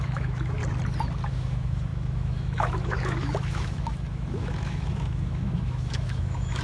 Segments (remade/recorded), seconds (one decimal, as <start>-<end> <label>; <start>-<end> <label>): 0.0-0.6 remade; 0.6-1.3 recorded; 1.3-6.6 remade

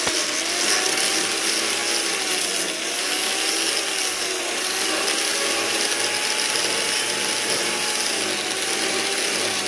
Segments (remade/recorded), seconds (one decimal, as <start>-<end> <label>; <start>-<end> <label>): 0.0-9.7 recorded

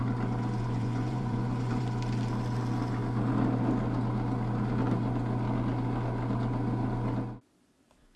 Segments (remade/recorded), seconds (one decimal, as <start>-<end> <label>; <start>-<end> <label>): 0.0-0.6 recorded; 0.6-1.8 remade; 1.8-8.2 recorded